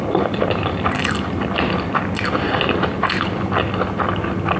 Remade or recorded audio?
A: recorded